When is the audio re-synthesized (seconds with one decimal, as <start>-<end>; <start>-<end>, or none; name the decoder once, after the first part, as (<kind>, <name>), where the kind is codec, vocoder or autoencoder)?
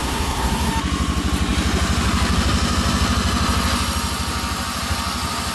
0.0-0.7 (codec, SNAC)